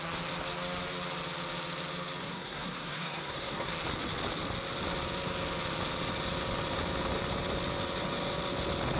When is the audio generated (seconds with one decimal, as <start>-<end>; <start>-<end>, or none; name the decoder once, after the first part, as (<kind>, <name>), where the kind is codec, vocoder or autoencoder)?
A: 2.2-3.7 (codec, SNAC)